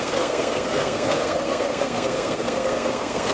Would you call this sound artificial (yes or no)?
yes